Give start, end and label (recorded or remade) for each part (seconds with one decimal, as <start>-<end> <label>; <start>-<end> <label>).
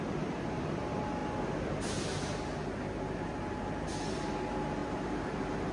0.0-4.8 recorded; 4.8-5.7 remade